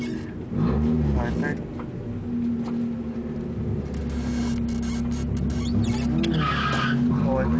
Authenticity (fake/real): real